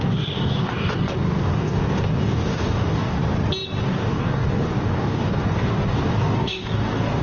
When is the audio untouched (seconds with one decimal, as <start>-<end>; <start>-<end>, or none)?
3.2-3.8